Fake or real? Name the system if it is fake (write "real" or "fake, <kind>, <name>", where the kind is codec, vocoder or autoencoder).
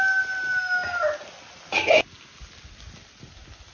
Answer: real